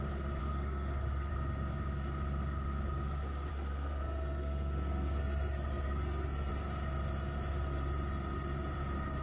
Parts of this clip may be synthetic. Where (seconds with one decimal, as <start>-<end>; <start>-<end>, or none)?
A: 0.4-1.3; 3.5-6.5